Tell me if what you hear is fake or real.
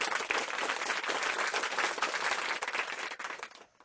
real